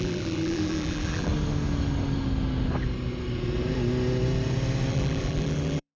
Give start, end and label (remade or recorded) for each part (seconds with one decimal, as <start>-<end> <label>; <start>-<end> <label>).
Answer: 0.0-1.3 remade; 1.3-4.9 recorded; 4.9-6.0 remade